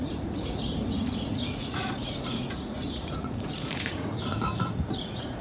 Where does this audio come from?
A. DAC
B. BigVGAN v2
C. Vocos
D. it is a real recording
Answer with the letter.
C